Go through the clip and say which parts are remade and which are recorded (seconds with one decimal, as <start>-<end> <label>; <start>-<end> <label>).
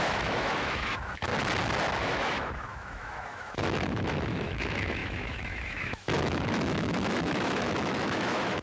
0.0-1.3 remade; 1.3-2.0 recorded; 2.0-8.6 remade